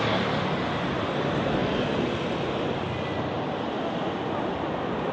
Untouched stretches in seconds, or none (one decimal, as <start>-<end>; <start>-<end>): 0.0-5.1